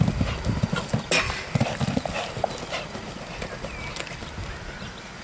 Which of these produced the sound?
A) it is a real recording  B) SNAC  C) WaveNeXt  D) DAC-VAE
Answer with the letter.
A